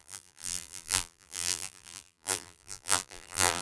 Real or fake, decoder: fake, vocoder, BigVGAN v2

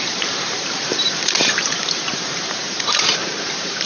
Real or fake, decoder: fake, vocoder, BigVGAN v2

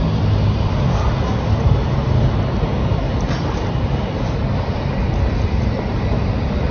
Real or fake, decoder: fake, vocoder, BigVGAN v2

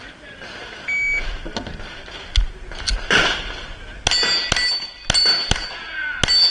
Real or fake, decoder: real